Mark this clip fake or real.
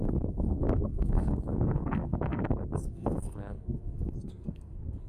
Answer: fake